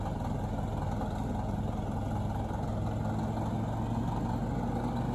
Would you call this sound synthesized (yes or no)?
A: no